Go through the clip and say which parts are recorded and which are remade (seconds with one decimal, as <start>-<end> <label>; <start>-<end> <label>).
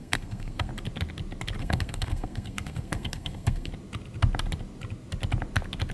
0.0-0.7 remade; 0.7-1.6 recorded; 1.6-3.7 remade; 3.7-5.9 recorded